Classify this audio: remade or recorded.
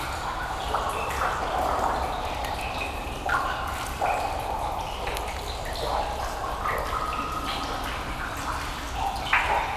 recorded